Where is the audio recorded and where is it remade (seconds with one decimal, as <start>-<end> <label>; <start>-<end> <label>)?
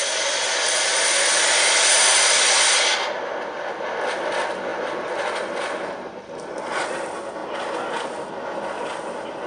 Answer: 0.0-9.5 recorded